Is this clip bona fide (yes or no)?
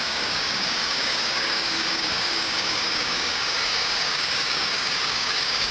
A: no